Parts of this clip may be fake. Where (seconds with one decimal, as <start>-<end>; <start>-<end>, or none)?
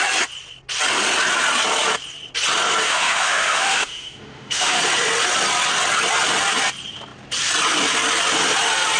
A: 2.8-4.8